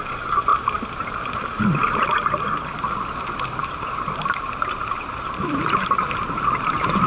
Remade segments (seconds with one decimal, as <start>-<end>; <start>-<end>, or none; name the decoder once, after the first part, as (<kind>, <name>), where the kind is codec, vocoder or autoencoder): 0.5-2.3 (vocoder, BigVGAN v2); 3.6-7.1